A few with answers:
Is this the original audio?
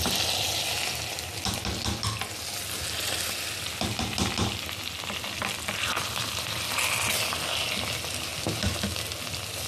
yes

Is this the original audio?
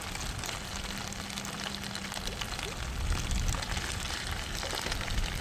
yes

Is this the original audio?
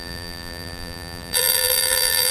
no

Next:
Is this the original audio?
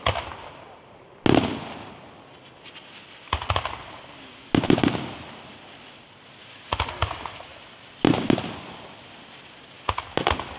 yes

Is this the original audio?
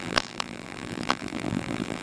no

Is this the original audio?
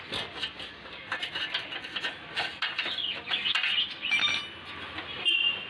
yes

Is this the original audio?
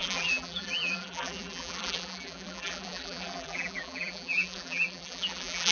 no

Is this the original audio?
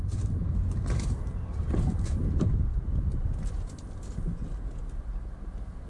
yes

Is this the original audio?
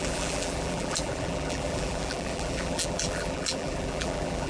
no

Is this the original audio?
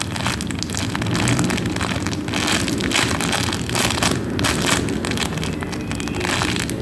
yes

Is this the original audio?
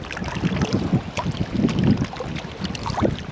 yes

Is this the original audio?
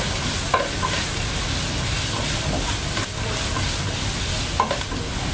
yes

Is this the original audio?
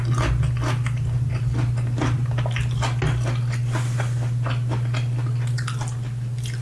yes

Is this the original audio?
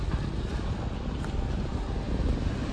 yes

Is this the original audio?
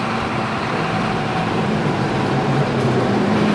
no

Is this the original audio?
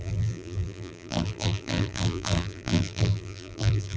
no